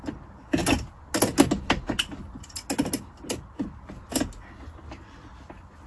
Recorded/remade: recorded